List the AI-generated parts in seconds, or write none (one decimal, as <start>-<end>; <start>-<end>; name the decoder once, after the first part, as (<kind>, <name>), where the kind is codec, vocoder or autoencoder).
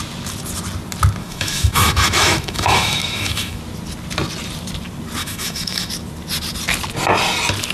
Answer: 1.2-3.6 (autoencoder, DAC-VAE); 5.2-5.9